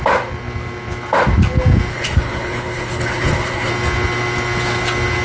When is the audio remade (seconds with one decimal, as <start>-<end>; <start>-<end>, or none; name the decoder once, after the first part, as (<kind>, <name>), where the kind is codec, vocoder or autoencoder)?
1.9-3.7 (codec, HILCodec)